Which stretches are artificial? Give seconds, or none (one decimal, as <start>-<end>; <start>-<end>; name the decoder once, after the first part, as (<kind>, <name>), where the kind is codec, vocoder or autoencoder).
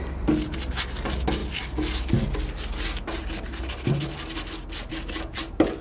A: none